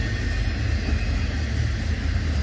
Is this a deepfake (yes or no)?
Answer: no